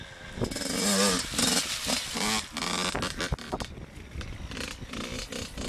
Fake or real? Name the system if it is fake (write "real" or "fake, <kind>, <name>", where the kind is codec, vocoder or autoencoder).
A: real